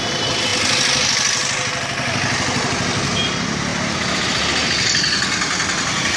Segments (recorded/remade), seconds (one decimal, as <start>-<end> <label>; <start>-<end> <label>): 0.0-6.2 recorded